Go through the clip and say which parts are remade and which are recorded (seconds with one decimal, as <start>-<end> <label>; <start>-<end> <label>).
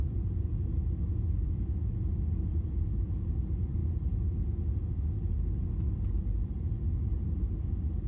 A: 0.0-8.1 recorded